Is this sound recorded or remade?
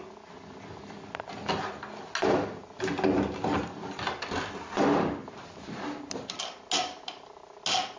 recorded